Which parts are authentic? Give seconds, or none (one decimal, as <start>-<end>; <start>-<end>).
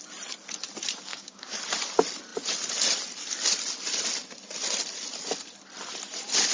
0.0-1.1; 1.6-6.5